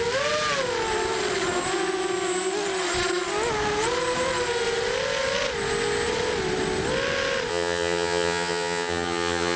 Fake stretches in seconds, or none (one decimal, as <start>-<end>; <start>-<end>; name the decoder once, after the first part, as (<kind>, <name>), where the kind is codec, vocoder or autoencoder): 7.5-9.6 (vocoder, HiFi-GAN)

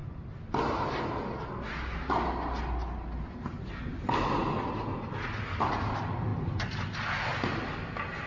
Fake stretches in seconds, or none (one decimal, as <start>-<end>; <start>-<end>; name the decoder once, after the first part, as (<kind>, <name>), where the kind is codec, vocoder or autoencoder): none

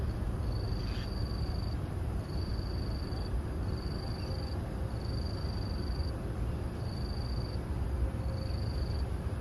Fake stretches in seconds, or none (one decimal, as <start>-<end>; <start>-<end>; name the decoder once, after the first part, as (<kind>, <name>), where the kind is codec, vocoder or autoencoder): none

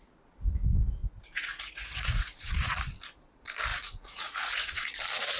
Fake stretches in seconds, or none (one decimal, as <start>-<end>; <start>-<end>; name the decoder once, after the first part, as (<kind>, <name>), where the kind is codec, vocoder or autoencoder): 1.0-2.9 (vocoder, Vocos); 3.7-5.0

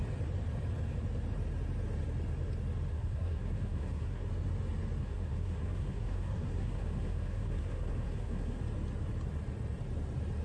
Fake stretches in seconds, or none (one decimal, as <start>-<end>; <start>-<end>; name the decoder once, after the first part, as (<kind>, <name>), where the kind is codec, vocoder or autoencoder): 2.9-4.3 (codec, SNAC); 5.0-8.6

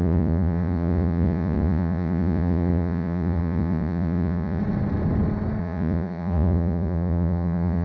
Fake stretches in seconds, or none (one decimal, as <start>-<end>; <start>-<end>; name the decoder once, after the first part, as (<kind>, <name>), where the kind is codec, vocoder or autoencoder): 0.0-4.6 (vocoder, Vocos); 5.6-7.8

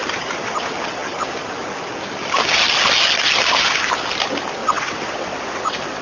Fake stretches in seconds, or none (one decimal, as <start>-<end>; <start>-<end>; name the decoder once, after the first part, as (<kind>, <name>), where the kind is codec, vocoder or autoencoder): 4.6-6.0 (vocoder, WaveNeXt)

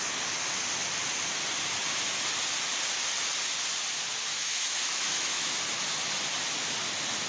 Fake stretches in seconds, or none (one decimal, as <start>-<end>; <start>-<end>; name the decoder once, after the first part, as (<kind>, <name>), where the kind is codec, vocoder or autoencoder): 4.3-5.5 (autoencoder, DAC-VAE)